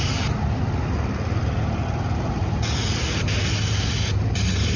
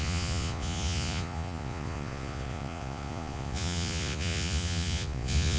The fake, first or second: second